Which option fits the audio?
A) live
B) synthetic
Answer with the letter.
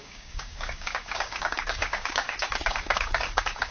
B